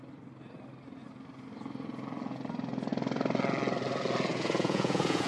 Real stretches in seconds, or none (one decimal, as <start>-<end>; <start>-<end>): 0.0-4.3